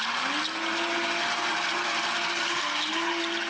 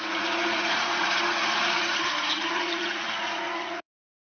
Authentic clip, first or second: first